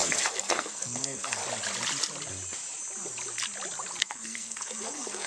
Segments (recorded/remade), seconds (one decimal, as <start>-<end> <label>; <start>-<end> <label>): 0.0-1.4 remade; 1.4-4.0 recorded; 4.0-5.3 remade